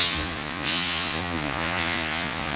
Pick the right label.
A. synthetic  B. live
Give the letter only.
A